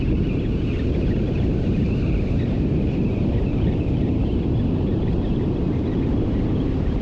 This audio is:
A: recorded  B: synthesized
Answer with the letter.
B